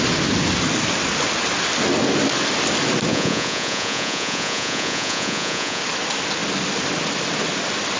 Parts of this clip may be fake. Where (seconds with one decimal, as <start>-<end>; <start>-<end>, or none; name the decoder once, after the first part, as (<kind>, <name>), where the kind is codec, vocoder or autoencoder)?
3.1-5.8 (vocoder, Vocos)